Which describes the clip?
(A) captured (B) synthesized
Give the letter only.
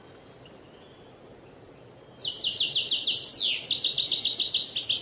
A